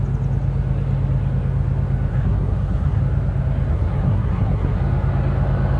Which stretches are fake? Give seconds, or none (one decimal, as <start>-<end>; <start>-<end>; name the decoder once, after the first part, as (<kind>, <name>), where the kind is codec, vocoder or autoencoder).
2.1-3.0 (codec, SNAC); 3.7-4.8